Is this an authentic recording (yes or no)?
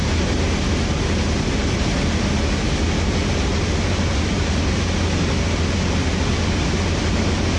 yes